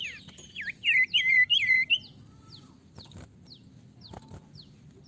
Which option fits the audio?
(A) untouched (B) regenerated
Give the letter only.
A